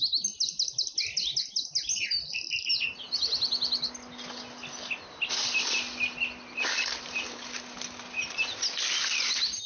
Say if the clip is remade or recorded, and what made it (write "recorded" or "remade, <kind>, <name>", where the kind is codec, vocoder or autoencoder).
recorded